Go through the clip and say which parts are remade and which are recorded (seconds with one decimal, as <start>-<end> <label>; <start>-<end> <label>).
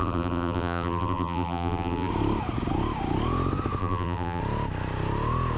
0.0-2.1 remade; 2.1-3.8 recorded; 3.8-4.4 remade; 4.4-5.6 recorded